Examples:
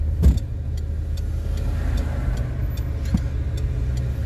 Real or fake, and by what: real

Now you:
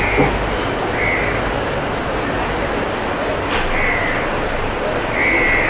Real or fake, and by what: real